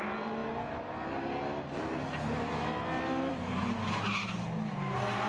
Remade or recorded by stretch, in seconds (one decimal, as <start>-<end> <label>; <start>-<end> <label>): 0.0-5.3 recorded